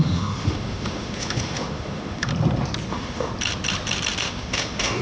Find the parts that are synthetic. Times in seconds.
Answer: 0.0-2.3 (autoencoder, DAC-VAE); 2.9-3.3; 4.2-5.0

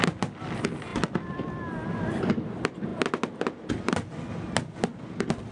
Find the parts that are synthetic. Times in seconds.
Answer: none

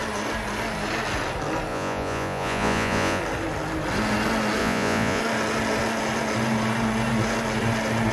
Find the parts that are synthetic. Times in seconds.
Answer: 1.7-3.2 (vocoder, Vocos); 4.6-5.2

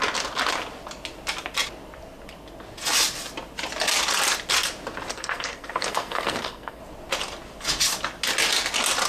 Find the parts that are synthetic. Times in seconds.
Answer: 5.1-6.8 (codec, SNAC)

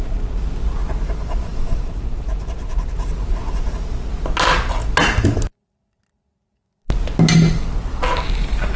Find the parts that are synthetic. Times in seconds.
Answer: 1.5-3.3 (vocoder, BigVGAN v2)

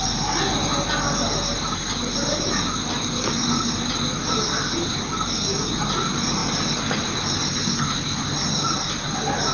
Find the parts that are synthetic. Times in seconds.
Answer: none

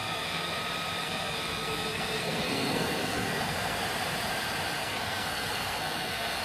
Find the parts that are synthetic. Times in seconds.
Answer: 0.0-0.6 (codec, SNAC); 1.0-3.8; 4.8-6.4

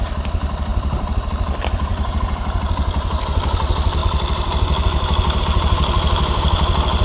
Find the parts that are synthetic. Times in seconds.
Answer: 0.7-1.3 (vocoder, BigVGAN v2)